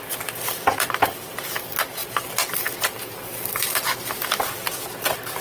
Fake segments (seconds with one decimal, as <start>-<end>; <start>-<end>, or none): none